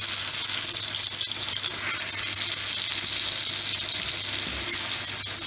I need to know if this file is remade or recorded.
recorded